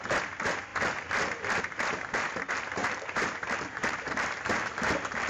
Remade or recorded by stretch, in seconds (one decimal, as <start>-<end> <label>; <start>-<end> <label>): 0.0-2.8 recorded; 2.8-4.6 remade; 4.6-5.3 recorded